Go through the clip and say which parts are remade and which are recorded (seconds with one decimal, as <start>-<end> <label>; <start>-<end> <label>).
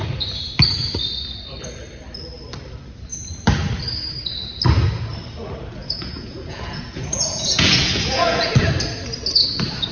0.0-5.8 recorded; 5.8-8.5 remade; 8.5-9.9 recorded